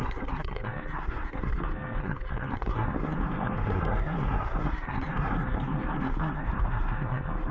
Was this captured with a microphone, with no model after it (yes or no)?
no